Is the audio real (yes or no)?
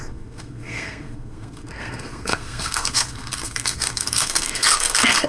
no